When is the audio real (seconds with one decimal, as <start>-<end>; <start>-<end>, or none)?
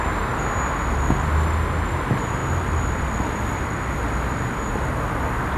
0.0-5.6